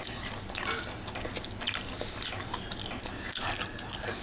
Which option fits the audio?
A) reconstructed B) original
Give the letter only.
B